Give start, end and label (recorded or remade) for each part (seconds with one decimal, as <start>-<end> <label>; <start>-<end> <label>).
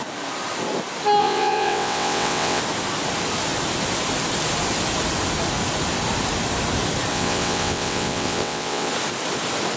0.0-1.2 recorded; 1.2-2.6 remade; 2.6-7.1 recorded; 7.1-8.9 remade; 8.9-9.8 recorded